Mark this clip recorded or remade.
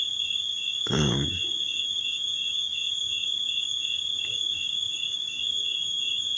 remade